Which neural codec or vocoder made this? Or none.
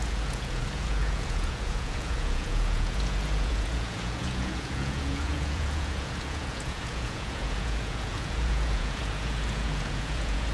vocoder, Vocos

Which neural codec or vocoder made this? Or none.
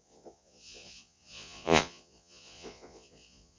vocoder, Vocos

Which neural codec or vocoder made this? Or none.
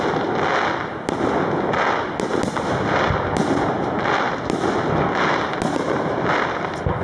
none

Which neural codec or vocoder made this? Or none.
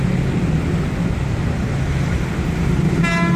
none